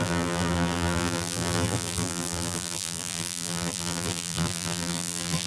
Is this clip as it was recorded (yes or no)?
no